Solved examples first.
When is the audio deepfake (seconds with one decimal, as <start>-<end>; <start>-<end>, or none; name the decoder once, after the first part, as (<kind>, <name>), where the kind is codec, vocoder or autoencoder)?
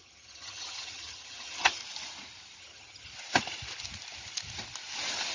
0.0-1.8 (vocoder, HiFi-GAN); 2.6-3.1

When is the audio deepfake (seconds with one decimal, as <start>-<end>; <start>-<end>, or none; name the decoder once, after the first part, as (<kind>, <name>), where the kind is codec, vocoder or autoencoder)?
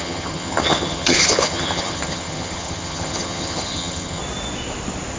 0.0-4.2 (vocoder, HiFi-GAN)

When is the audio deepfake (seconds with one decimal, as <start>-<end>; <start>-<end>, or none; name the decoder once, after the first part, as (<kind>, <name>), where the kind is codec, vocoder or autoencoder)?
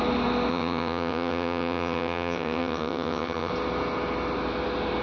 0.5-3.5 (vocoder, HiFi-GAN)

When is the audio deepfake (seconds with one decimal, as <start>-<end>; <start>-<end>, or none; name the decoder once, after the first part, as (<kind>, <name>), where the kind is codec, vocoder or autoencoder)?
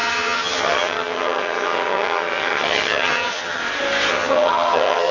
0.0-3.6 (vocoder, HiFi-GAN); 4.1-5.1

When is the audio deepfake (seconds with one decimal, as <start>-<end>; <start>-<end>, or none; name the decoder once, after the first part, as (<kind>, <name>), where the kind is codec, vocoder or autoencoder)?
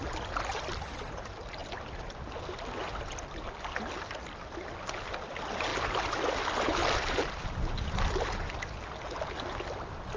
none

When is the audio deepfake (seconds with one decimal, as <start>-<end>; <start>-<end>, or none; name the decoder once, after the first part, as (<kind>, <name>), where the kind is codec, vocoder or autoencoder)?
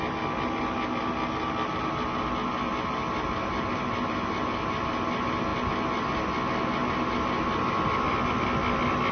none